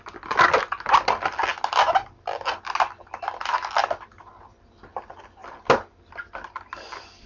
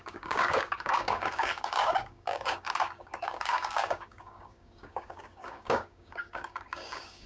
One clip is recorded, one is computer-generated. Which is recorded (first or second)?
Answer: first